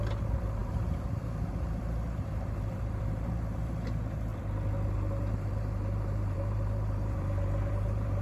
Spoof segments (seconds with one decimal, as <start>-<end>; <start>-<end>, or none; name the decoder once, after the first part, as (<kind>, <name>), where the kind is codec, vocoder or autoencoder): 0.0-4.3 (vocoder, BigVGAN v2); 4.9-8.2